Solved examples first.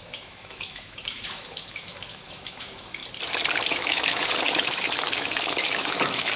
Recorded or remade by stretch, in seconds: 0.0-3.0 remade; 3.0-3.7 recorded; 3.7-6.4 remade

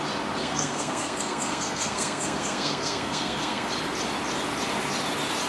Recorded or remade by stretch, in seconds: 0.0-0.4 recorded; 0.4-3.7 remade; 3.7-5.5 recorded